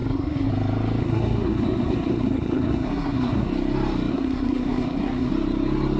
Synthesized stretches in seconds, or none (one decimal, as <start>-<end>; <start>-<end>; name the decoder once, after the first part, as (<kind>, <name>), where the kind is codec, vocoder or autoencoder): 0.0-0.5 (codec, SNAC); 1.0-3.5; 4.1-5.3